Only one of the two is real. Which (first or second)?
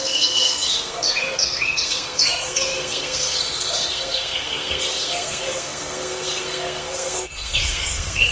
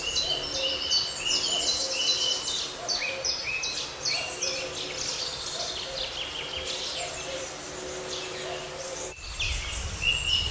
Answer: second